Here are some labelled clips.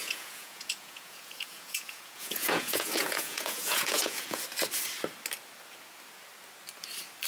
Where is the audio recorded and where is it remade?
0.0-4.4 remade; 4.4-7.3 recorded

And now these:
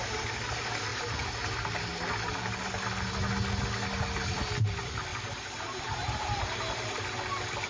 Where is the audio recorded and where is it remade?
0.0-7.7 recorded

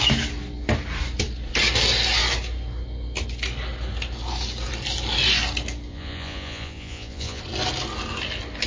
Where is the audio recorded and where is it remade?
0.0-5.9 recorded; 5.9-7.4 remade; 7.4-8.7 recorded

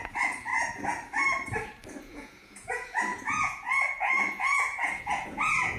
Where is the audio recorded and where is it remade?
0.0-0.5 remade; 0.5-2.0 recorded; 2.0-5.8 remade

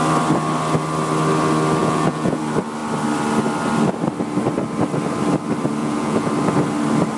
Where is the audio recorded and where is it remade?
0.0-1.8 recorded; 1.8-2.4 remade; 2.4-5.8 recorded; 5.8-6.3 remade; 6.3-7.2 recorded

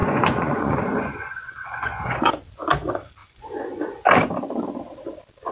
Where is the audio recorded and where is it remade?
0.0-2.3 remade; 2.3-3.2 recorded; 3.2-3.8 remade; 3.8-5.5 recorded